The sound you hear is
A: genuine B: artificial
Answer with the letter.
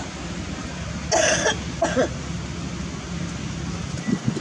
A